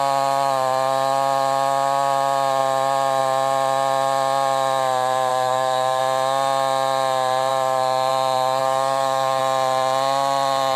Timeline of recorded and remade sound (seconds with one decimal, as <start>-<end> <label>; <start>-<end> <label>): 0.0-5.3 recorded; 5.3-6.0 remade; 6.0-8.6 recorded; 8.6-9.4 remade; 9.4-10.8 recorded